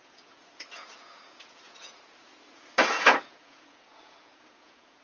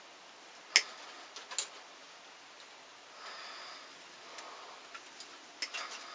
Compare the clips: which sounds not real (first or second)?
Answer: first